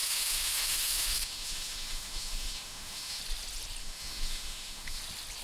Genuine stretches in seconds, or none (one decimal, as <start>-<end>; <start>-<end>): 3.2-3.8; 5.0-5.4